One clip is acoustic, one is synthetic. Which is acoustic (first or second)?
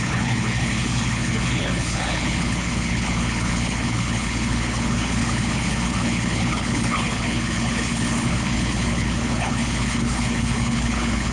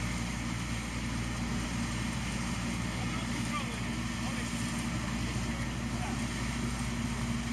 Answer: second